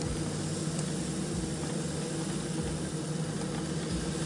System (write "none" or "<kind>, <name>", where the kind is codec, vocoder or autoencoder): none